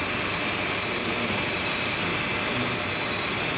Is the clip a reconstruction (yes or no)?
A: yes